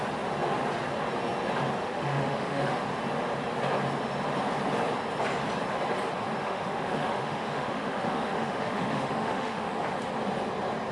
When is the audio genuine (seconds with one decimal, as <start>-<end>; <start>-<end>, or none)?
0.0-1.8; 2.7-6.4; 9.7-10.9